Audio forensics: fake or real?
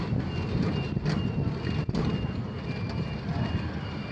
real